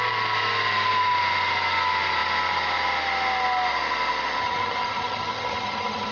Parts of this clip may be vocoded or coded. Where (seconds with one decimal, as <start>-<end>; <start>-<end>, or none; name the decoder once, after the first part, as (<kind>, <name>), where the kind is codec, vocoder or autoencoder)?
4.4-6.1 (vocoder, HiFi-GAN)